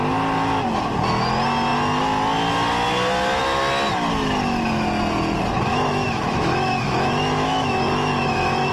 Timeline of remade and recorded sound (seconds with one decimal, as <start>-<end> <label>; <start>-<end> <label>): 0.0-5.7 recorded; 5.7-8.7 remade